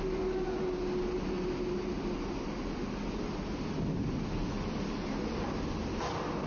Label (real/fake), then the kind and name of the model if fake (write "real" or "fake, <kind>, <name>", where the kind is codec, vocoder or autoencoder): real